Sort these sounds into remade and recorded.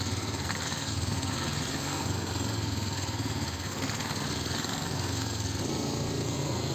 remade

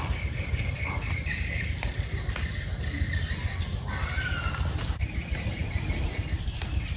recorded